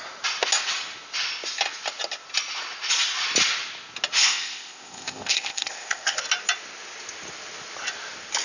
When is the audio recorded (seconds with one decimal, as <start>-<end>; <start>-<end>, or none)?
0.0-4.2; 6.2-8.4